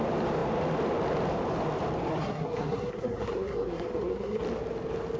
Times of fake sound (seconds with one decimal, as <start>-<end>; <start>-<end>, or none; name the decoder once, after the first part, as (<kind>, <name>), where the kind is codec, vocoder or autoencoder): 2.1-4.4 (codec, SNAC)